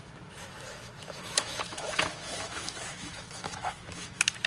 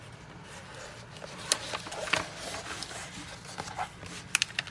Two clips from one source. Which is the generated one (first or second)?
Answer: first